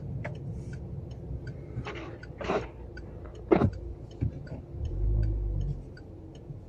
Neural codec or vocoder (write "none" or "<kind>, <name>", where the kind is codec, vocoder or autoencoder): none